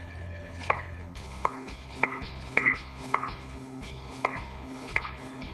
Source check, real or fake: fake